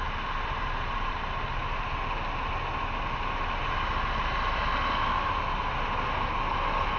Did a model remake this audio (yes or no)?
no